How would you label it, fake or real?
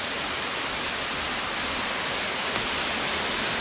real